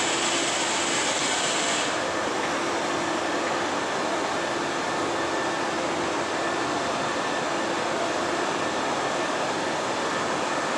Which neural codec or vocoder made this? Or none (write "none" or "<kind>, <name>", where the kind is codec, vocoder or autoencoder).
none